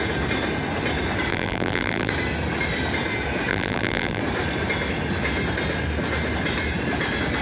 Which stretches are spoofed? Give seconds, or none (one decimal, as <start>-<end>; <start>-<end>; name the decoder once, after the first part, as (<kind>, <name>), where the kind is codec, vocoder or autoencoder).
1.3-2.1 (vocoder, BigVGAN v2); 3.5-4.2